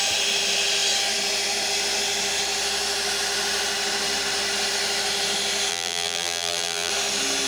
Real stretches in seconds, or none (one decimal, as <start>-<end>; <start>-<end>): 0.0-5.7; 6.9-7.5